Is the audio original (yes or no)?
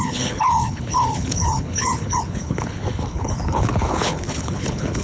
no